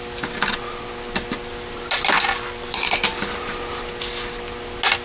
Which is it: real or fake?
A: real